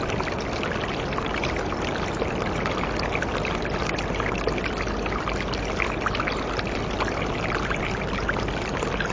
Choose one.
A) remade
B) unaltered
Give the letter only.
B